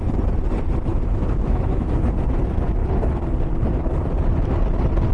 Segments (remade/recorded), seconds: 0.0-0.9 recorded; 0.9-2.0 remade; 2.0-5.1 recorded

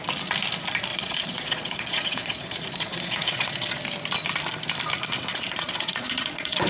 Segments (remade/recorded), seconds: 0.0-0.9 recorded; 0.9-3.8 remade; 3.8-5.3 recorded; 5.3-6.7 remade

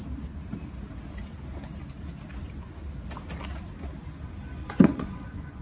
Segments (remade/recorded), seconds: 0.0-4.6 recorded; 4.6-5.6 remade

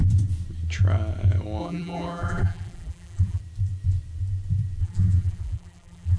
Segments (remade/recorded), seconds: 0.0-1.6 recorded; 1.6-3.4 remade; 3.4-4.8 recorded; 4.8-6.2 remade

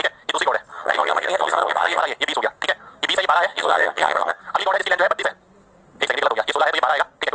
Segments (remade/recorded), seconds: 0.0-0.7 recorded; 0.7-2.0 remade; 2.0-3.5 recorded; 3.5-4.4 remade; 4.4-7.3 recorded